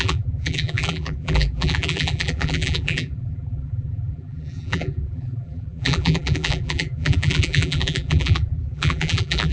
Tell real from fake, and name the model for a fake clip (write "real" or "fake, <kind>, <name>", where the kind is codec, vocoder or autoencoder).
fake, vocoder, BigVGAN v2